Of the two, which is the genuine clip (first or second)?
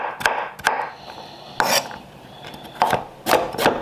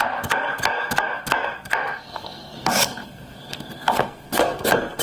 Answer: first